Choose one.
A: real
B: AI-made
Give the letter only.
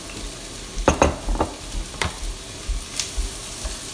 A